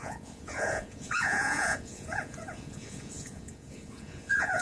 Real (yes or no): no